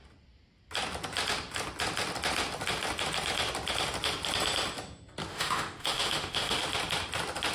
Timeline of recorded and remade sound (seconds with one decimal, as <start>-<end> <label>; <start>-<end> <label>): 0.0-5.3 recorded; 5.3-6.6 remade; 6.6-7.5 recorded